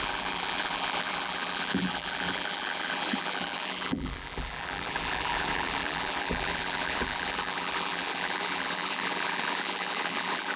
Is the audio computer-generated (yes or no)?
yes